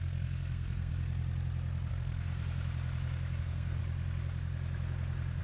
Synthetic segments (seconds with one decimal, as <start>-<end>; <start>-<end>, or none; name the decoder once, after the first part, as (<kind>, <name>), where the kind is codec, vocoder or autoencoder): 0.0-0.9 (codec, SNAC); 1.9-2.3; 3.4-3.8